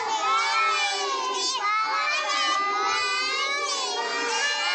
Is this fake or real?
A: real